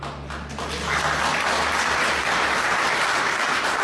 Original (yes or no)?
yes